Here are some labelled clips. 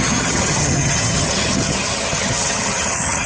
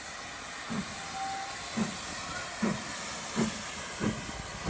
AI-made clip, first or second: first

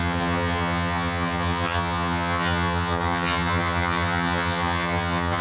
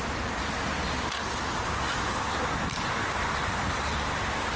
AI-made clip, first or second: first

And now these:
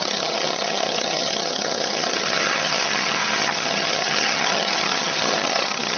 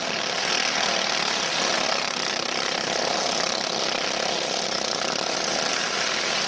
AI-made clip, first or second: first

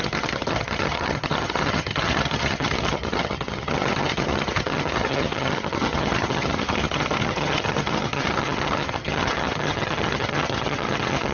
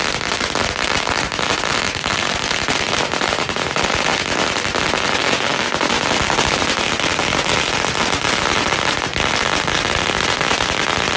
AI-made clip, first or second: first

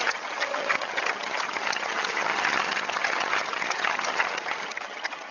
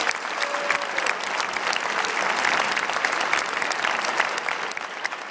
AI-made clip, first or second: first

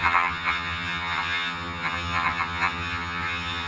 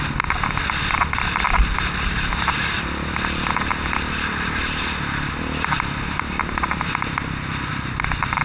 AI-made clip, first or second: first